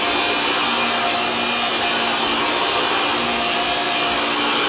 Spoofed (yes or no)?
no